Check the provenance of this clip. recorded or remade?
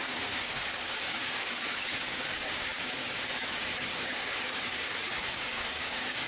remade